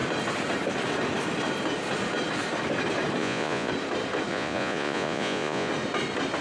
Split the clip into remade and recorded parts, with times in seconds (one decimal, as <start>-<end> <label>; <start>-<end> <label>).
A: 0.0-3.2 recorded; 3.2-3.7 remade; 3.7-4.3 recorded; 4.3-5.7 remade; 5.7-6.4 recorded